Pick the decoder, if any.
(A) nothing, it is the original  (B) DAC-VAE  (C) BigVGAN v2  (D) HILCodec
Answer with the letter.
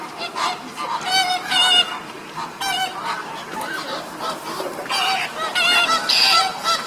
C